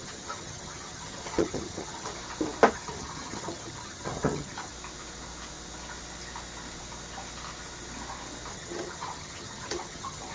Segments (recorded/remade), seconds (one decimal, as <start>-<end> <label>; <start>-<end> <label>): 0.0-2.1 remade; 2.1-2.7 recorded; 2.7-4.7 remade; 4.7-8.5 recorded; 8.5-10.3 remade